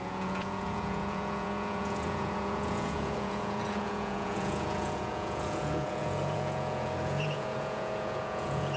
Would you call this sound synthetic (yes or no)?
yes